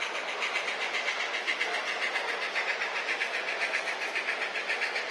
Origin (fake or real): real